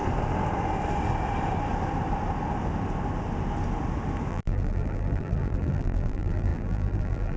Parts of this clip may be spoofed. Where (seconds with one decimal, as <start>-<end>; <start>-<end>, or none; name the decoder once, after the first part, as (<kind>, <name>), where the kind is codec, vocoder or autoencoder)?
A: 4.3-7.4 (vocoder, BigVGAN v2)